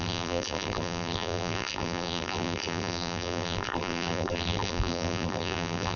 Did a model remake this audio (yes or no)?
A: yes